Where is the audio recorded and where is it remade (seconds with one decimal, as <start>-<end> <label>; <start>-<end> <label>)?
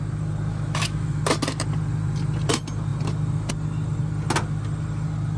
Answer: 0.0-0.5 recorded; 0.5-1.2 remade; 1.2-5.4 recorded